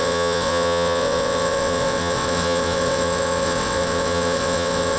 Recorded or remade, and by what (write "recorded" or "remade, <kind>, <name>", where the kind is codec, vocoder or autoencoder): remade, vocoder, WaveNeXt